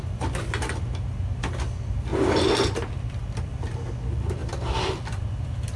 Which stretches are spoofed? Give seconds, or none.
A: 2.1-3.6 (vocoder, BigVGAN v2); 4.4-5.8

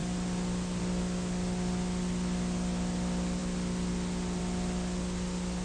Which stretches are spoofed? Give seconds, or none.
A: none

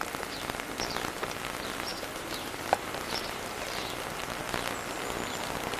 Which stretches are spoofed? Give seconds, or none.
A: 1.9-3.6 (vocoder, BigVGAN v2)

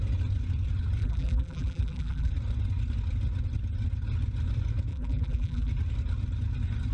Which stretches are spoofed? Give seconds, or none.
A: 1.0-2.3 (vocoder, BigVGAN v2); 4.9-5.7

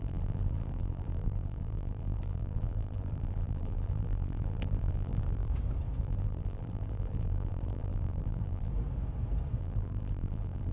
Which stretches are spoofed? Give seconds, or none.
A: 0.0-5.5 (vocoder, BigVGAN v2); 6.0-8.7; 9.6-10.7

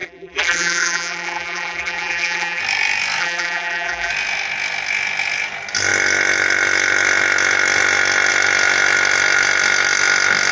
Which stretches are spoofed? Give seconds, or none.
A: 0.0-2.6 (vocoder, BigVGAN v2); 3.2-4.1

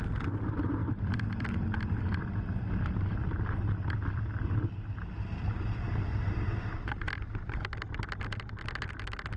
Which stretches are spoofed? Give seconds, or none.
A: 0.8-5.6 (vocoder, BigVGAN v2); 6.1-7.2

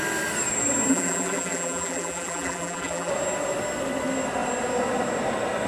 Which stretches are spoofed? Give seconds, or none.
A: 0.9-3.1 (vocoder, BigVGAN v2)